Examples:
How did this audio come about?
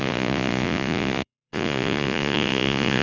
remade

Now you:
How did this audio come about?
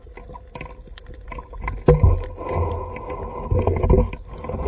recorded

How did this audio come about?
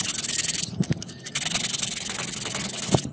recorded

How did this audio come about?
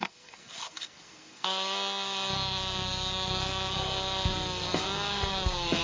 remade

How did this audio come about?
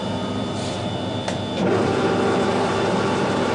remade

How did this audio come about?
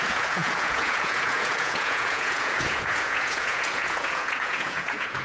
remade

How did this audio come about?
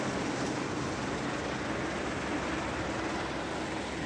recorded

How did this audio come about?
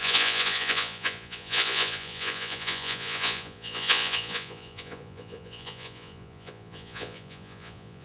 remade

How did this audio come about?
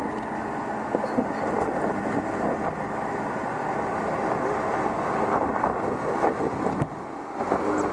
recorded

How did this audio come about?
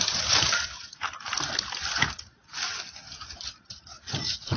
recorded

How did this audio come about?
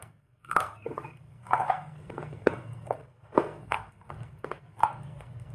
remade